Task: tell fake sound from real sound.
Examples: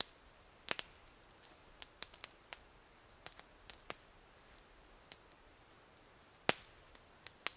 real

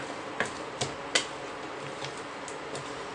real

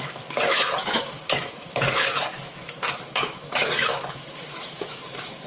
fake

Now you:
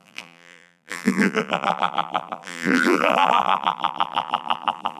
fake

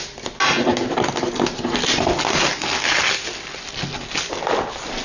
real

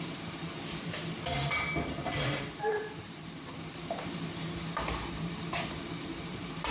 fake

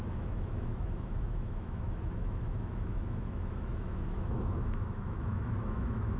fake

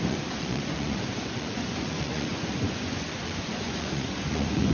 fake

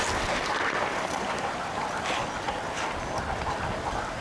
real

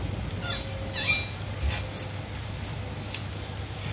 real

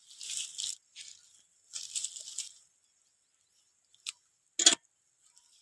real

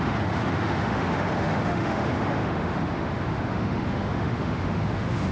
fake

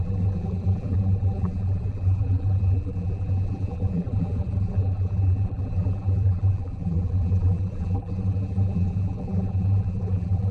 fake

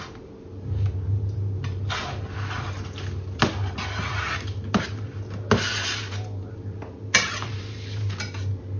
real